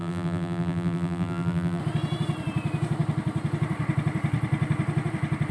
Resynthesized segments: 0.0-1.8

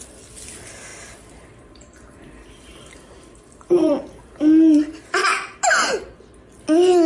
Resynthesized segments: 0.9-4.2

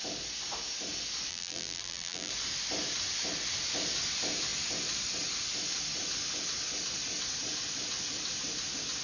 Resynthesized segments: 1.3-2.3

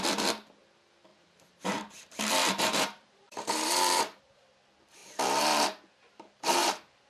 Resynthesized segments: 1.1-4.2; 5.0-7.1

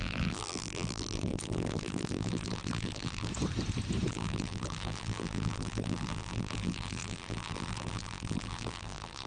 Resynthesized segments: 0.0-3.3; 4.1-9.3

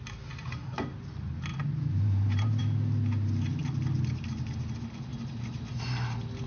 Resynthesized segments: 1.5-2.6; 3.6-4.1; 5.1-5.8